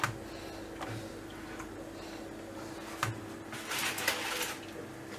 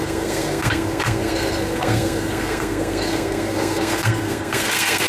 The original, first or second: first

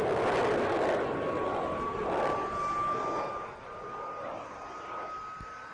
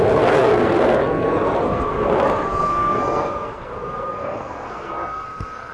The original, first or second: first